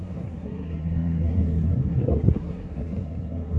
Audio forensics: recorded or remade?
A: remade